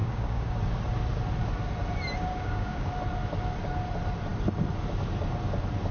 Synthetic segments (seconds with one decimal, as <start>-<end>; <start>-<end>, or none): 0.0-0.6; 2.3-2.9